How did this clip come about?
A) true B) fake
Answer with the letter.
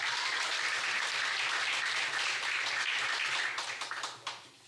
A